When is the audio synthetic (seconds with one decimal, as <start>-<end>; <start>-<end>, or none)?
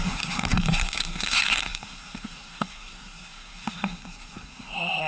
0.0-5.1